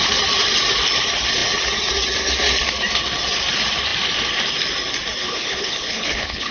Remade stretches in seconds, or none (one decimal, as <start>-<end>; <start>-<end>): 5.2-6.5